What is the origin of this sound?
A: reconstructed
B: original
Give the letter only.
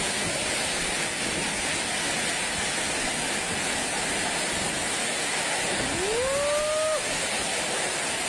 B